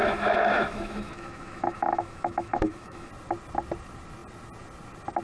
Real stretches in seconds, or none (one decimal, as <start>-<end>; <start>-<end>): 3.1-5.2